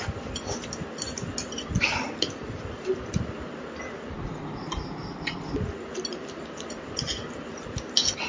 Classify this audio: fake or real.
real